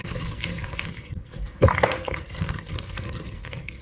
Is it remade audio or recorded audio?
remade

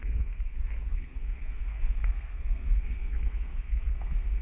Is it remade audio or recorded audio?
remade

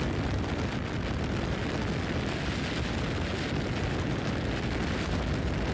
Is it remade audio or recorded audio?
recorded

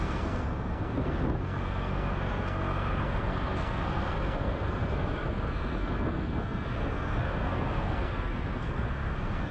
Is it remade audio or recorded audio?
remade